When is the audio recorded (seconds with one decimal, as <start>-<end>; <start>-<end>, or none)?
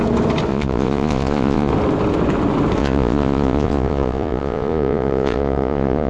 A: 0.0-0.5; 1.7-2.8